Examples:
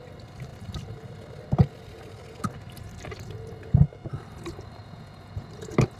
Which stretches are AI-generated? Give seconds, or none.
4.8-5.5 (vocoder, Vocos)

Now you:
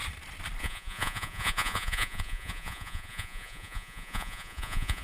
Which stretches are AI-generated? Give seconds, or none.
0.6-5.0 (vocoder, Vocos)

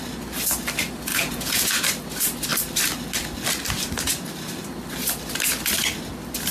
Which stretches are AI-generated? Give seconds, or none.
1.1-1.7 (vocoder, Vocos)

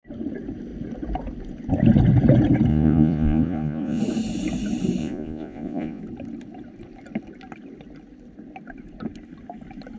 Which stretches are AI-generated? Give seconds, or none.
2.7-4.0 (vocoder, Vocos); 5.0-6.0

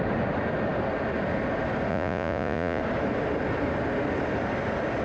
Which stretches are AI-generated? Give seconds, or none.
1.9-2.8 (vocoder, Vocos)